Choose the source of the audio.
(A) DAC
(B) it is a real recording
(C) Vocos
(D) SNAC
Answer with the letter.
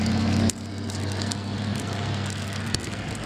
D